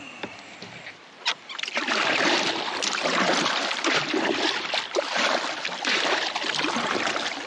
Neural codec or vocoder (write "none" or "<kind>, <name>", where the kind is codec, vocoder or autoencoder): vocoder, BigVGAN v2